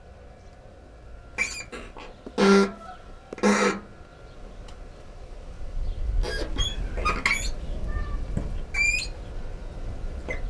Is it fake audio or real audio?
real